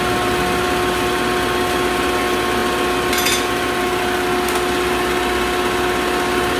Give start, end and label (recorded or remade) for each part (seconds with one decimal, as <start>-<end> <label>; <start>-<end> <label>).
0.0-6.6 recorded